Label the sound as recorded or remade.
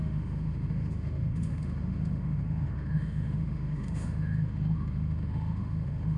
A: remade